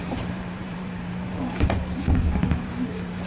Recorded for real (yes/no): no